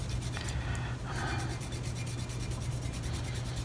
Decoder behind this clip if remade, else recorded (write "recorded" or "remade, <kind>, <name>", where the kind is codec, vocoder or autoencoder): recorded